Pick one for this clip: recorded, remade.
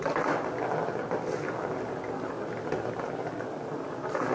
recorded